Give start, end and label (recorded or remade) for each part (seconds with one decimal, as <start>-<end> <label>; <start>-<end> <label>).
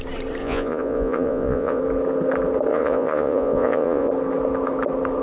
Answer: 0.0-0.4 recorded; 0.4-1.8 remade; 1.8-2.7 recorded; 2.7-4.1 remade; 4.1-5.2 recorded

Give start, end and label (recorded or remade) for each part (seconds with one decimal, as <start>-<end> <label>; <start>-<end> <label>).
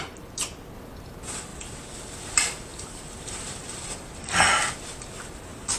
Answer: 0.0-2.7 recorded; 2.7-4.7 remade; 4.7-5.8 recorded